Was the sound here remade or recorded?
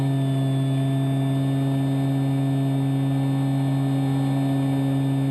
recorded